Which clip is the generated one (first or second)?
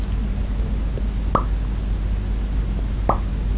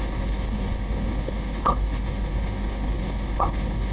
second